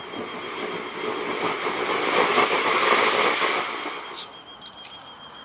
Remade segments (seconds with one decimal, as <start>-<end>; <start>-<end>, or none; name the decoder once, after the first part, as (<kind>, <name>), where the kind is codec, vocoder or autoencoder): 0.0-0.7 (vocoder, BigVGAN v2); 1.4-2.8; 4.0-5.4